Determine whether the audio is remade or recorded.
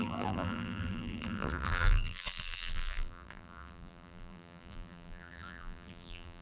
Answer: remade